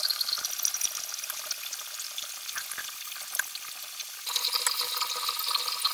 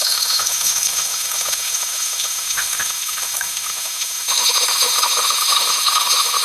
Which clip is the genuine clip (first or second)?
first